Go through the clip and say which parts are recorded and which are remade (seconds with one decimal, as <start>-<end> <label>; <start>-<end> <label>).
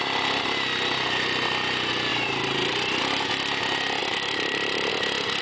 0.0-2.1 recorded; 2.1-3.0 remade; 3.0-4.0 recorded; 4.0-4.9 remade; 4.9-5.4 recorded